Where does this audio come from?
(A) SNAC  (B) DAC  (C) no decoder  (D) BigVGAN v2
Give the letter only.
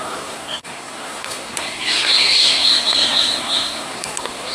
A